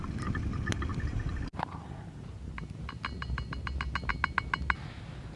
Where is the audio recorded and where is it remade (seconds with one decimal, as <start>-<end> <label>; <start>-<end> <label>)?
0.0-5.4 recorded